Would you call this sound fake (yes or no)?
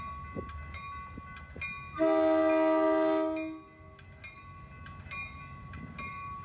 no